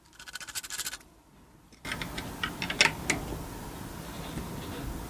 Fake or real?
real